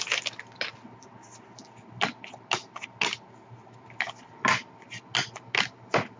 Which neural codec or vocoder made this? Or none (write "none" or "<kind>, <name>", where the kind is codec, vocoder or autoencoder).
none